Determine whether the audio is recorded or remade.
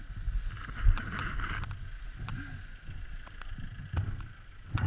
recorded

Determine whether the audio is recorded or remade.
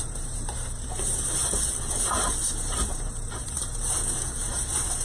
remade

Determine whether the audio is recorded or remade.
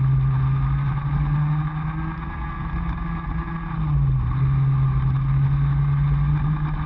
recorded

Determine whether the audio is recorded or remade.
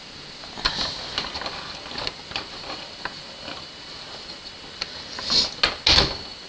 recorded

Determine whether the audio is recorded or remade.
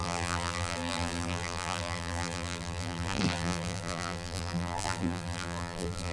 remade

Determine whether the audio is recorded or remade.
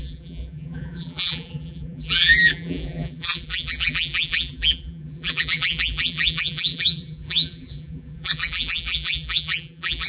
remade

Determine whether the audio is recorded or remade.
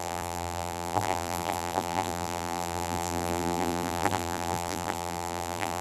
remade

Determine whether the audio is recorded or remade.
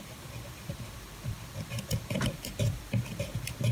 remade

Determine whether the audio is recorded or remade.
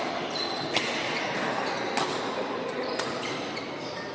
recorded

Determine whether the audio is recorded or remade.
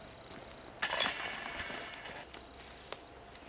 recorded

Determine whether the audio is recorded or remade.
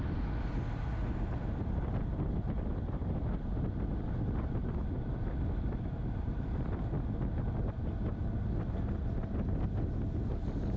recorded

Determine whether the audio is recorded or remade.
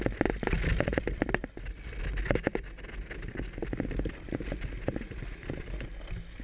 recorded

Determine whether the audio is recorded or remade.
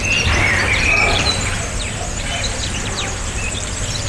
remade